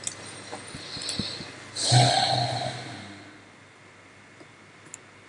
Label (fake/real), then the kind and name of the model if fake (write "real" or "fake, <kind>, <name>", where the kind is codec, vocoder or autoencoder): real